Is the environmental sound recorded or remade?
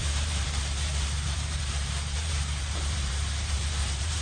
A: remade